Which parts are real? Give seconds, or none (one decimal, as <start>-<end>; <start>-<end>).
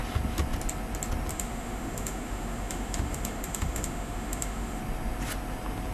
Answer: 0.0-1.3; 4.8-5.9